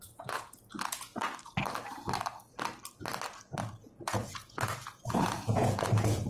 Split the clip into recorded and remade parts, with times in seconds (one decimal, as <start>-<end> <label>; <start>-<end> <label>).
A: 0.0-1.1 remade; 1.1-3.8 recorded; 3.8-6.3 remade